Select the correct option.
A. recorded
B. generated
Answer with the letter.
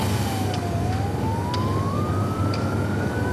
B